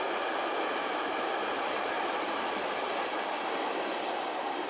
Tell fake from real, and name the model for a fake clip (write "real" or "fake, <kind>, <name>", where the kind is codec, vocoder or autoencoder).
fake, vocoder, BigVGAN v2